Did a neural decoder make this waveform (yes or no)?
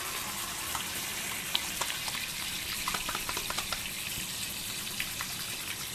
no